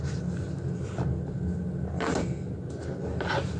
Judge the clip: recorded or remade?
recorded